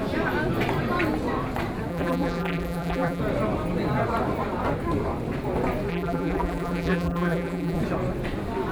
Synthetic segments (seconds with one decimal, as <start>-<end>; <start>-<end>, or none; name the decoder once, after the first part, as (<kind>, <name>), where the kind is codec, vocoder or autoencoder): 1.9-3.2 (vocoder, BigVGAN v2); 5.9-7.8